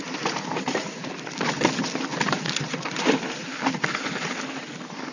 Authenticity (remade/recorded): recorded